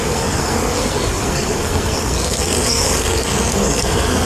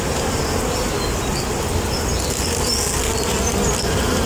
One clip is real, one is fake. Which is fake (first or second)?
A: first